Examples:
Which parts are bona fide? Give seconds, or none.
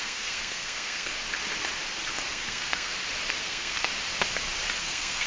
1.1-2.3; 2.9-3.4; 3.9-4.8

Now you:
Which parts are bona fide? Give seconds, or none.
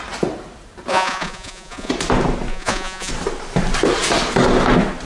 0.0-0.9; 1.9-2.5; 3.1-5.0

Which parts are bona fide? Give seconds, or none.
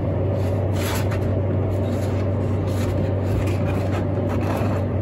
1.3-4.3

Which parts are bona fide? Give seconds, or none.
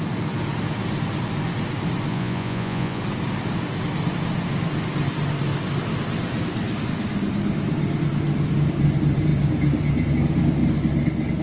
0.0-2.1; 3.0-11.4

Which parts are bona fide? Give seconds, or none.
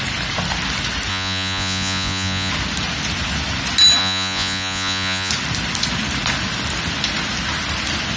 0.0-1.1; 2.5-4.0; 5.3-8.2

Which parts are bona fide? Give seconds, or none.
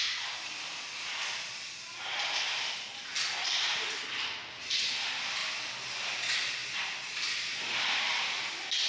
0.0-8.9